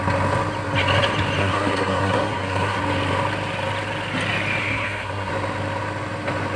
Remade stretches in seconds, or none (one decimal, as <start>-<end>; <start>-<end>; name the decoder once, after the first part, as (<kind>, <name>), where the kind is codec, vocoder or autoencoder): 1.4-2.8 (codec, SNAC); 4.6-5.3